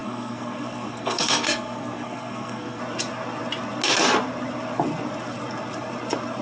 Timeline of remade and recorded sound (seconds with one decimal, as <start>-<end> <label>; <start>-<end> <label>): 0.0-2.8 remade; 2.8-6.4 recorded

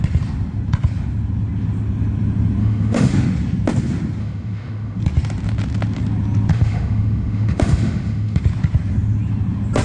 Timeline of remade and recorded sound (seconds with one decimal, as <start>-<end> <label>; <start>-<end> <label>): 0.0-2.6 recorded; 2.6-3.1 remade; 3.1-4.2 recorded; 4.2-5.0 remade; 5.0-6.5 recorded; 6.5-8.4 remade; 8.4-9.8 recorded

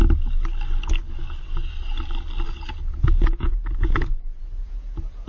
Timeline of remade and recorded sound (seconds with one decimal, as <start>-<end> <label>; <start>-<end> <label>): 0.0-2.8 recorded; 2.8-5.3 remade

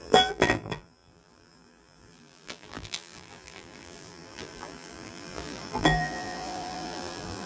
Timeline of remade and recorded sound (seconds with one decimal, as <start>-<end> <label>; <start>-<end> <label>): 0.0-7.5 remade

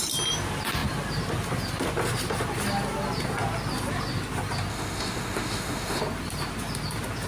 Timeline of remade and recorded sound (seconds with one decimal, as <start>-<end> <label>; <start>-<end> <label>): 0.0-4.7 recorded; 4.7-6.0 remade; 6.0-7.3 recorded

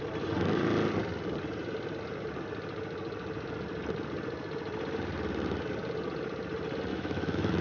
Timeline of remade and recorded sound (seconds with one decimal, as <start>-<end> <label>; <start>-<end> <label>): 0.0-6.9 recorded; 6.9-7.6 remade

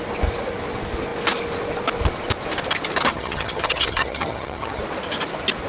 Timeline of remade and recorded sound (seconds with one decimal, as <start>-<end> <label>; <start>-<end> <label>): 0.0-3.1 recorded; 3.1-4.8 remade; 4.8-5.7 recorded

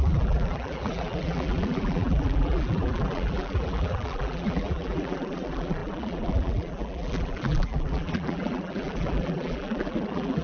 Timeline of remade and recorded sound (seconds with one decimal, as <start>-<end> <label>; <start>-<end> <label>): 0.0-10.4 remade